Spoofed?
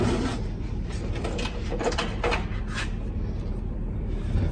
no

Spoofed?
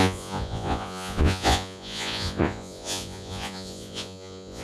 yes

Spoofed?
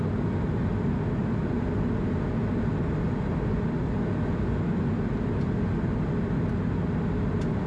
no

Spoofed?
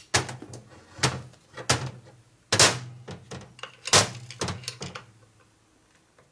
no